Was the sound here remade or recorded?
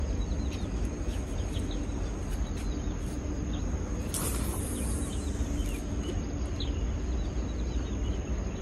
recorded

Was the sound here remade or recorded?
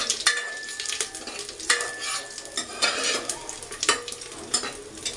recorded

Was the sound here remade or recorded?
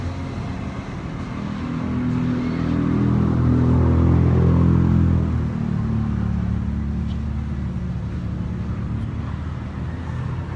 recorded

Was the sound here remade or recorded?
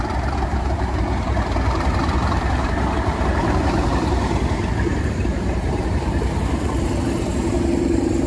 remade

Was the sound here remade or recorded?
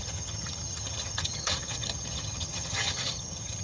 remade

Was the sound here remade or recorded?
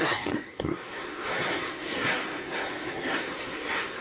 remade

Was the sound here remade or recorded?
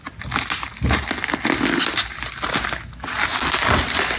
recorded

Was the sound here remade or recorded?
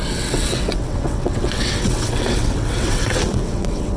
remade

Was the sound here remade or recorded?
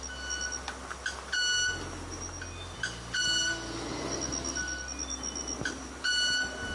recorded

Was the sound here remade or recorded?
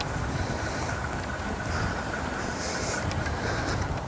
recorded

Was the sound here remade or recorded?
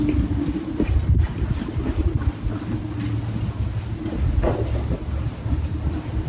recorded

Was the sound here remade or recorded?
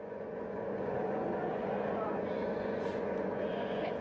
remade